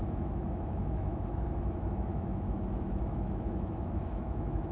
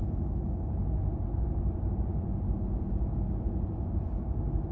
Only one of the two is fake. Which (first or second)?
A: first